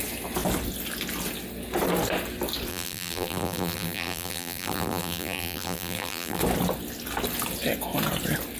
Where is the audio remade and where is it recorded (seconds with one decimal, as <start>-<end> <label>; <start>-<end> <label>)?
0.0-2.7 recorded; 2.7-6.4 remade; 6.4-8.6 recorded